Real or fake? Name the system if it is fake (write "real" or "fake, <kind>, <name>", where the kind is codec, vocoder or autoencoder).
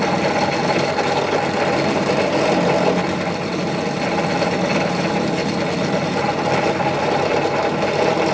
real